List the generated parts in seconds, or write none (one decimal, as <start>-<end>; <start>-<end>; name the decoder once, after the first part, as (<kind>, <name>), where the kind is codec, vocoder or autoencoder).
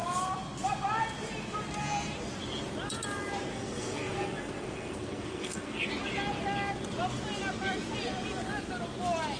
3.5-5.9 (codec, SNAC)